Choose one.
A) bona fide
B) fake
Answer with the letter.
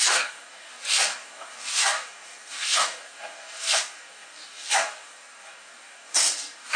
B